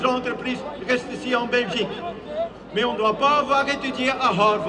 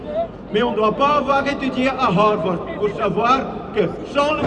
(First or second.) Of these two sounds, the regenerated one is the second